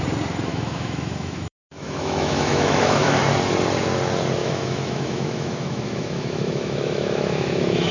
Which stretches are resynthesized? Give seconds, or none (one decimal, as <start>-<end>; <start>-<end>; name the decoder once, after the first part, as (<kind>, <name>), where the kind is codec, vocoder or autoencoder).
0.5-3.2 (autoencoder, DAC-VAE); 4.4-7.9